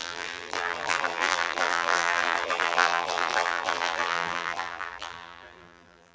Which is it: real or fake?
fake